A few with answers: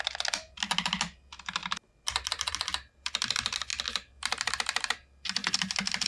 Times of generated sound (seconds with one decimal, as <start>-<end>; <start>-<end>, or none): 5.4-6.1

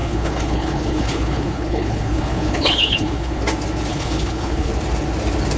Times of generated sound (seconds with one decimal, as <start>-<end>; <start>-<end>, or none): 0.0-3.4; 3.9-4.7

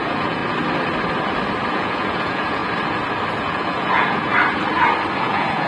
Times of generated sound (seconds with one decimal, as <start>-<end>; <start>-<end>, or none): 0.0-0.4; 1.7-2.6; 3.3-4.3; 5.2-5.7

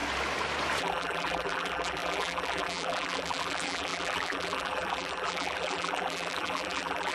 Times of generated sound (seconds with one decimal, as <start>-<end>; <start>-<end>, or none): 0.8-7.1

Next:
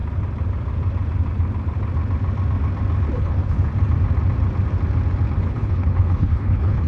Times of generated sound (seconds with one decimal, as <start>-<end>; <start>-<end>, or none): 3.2-3.7; 5.4-6.9